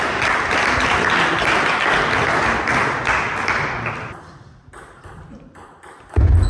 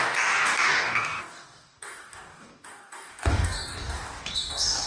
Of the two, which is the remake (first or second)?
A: second